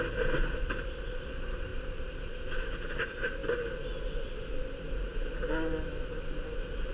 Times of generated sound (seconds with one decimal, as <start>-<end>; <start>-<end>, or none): none